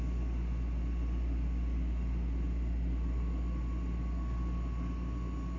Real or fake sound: real